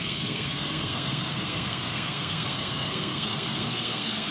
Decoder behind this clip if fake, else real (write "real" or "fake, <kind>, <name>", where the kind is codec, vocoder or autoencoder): fake, codec, SNAC